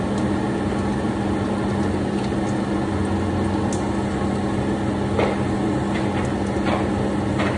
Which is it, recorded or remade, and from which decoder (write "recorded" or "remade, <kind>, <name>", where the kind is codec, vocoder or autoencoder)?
recorded